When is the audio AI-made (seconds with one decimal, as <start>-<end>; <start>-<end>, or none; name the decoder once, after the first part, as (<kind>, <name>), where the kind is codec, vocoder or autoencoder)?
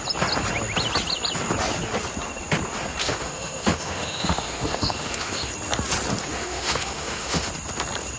3.0-5.5 (autoencoder, DAC-VAE); 6.2-7.5